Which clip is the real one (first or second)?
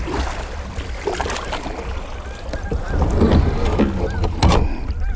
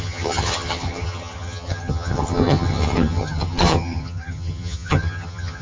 first